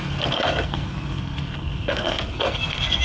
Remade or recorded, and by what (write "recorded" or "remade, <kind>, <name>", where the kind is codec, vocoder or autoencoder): remade, codec, SNAC